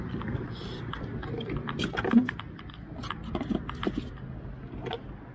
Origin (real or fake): real